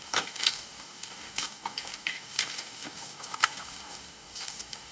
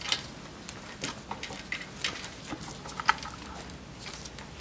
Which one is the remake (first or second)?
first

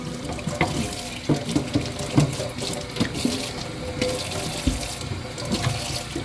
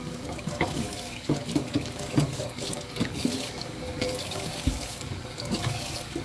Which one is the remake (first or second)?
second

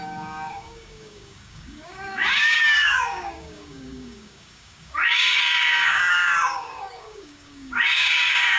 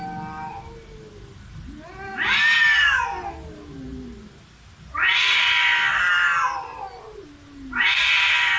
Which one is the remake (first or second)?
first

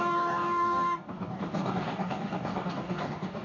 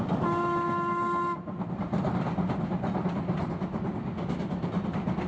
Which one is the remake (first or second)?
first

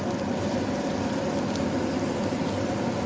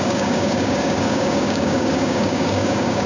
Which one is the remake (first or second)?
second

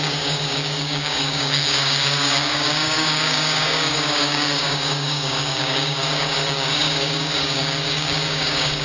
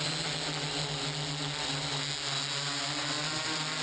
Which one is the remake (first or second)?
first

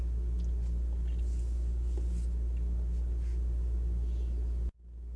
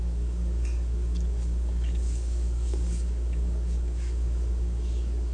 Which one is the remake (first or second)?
second